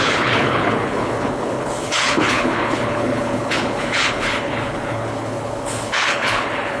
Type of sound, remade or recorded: remade